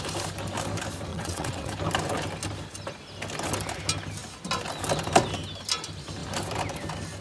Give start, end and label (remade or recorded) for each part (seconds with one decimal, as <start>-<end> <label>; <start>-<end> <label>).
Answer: 0.0-1.1 recorded; 1.1-1.7 remade; 1.7-7.2 recorded